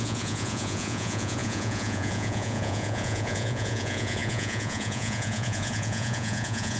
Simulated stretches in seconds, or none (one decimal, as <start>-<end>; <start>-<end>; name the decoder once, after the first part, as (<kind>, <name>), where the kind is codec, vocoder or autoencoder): 0.0-6.8 (vocoder, Vocos)